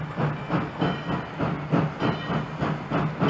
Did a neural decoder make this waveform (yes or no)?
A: no